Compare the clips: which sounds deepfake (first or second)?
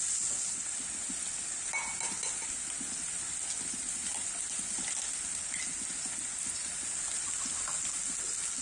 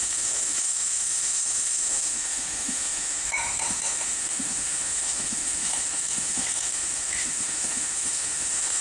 second